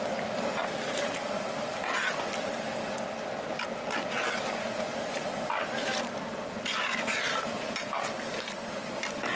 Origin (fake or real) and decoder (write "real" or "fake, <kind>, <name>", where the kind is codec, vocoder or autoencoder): real